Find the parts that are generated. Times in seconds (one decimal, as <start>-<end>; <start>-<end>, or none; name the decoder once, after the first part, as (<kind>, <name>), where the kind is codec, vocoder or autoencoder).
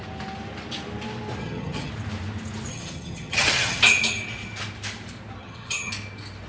1.4-1.9 (vocoder, HiFi-GAN); 2.7-3.8; 5.4-5.9